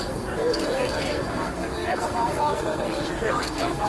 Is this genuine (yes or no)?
no